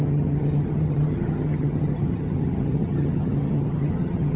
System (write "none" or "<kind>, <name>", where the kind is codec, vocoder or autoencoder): vocoder, HiFi-GAN